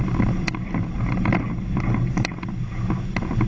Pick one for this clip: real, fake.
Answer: real